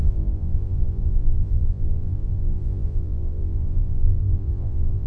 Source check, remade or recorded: remade